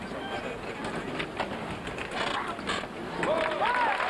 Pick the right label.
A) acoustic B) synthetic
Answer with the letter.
A